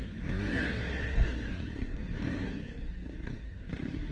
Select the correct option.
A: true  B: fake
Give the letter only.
B